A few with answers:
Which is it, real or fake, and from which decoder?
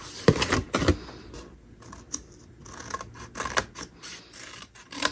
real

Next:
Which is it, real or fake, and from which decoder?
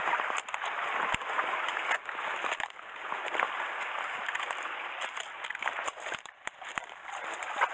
real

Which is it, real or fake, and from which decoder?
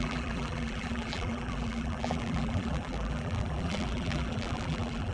fake, vocoder, BigVGAN v2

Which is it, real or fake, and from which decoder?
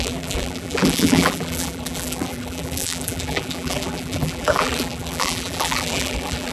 fake, vocoder, BigVGAN v2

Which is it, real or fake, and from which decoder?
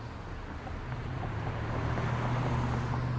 real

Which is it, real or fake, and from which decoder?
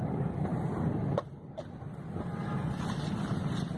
real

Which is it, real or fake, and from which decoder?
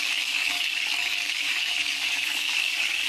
fake, codec, DAC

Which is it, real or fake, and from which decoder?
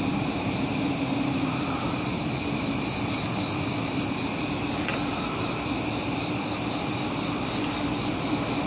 fake, vocoder, BigVGAN v2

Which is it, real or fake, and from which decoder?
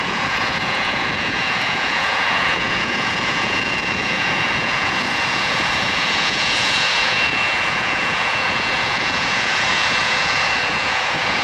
fake, vocoder, Vocos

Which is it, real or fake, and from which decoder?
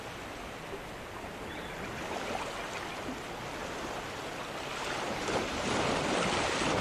real